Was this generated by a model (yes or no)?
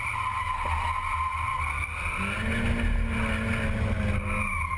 no